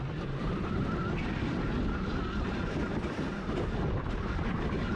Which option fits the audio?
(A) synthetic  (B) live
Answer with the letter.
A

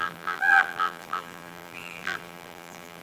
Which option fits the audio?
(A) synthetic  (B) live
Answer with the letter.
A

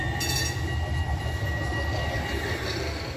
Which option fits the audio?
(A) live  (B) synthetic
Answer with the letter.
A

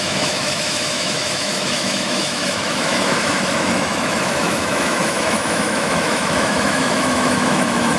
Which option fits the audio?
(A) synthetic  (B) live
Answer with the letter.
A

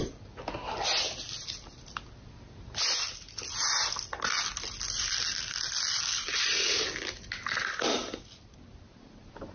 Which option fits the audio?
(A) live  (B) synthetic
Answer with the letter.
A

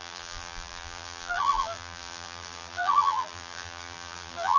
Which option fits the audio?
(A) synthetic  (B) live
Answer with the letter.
A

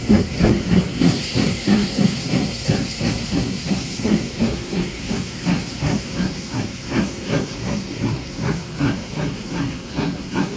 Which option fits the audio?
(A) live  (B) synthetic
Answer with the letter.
B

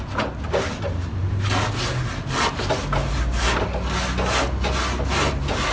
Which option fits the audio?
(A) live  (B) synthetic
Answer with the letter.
A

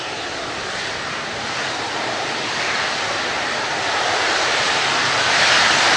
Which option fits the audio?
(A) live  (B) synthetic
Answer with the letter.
B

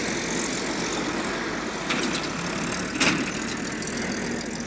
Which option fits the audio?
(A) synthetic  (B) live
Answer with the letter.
B